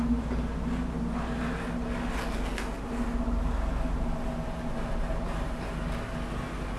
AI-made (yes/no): no